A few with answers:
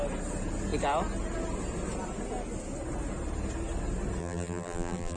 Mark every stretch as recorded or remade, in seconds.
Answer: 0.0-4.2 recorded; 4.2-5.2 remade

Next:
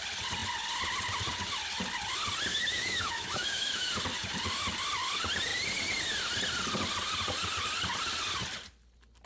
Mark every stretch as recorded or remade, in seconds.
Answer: 0.0-2.5 recorded; 2.5-3.9 remade; 3.9-9.3 recorded

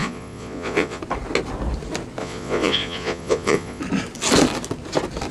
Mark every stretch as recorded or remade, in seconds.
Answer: 0.0-1.0 remade; 1.0-2.2 recorded; 2.2-3.8 remade; 3.8-5.3 recorded

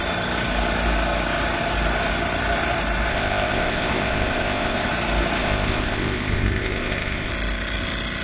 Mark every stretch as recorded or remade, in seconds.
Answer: 0.0-3.1 recorded; 3.1-4.9 remade; 4.9-5.4 recorded; 5.4-7.3 remade; 7.3-8.2 recorded

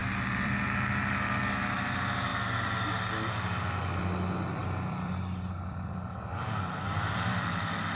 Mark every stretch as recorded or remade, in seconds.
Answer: 0.0-0.5 remade; 0.5-4.6 recorded; 4.6-7.9 remade

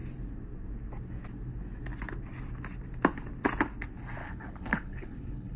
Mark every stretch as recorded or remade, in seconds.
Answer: 0.0-4.2 recorded; 4.2-5.6 remade

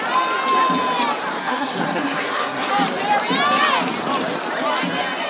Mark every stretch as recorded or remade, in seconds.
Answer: 0.0-1.4 recorded; 1.4-2.7 remade; 2.7-5.3 recorded

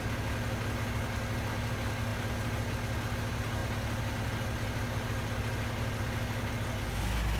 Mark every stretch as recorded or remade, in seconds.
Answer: 0.0-7.4 recorded